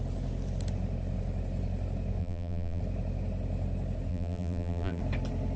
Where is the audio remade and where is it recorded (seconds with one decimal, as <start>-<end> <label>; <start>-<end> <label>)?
0.0-2.2 recorded; 2.2-2.8 remade; 2.8-4.1 recorded; 4.1-5.0 remade; 5.0-5.6 recorded